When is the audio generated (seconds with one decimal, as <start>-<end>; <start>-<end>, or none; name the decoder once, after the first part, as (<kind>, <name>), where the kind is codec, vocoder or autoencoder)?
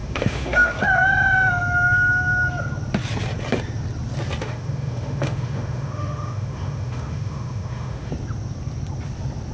0.0-0.7 (autoencoder, DAC-VAE); 4.4-8.1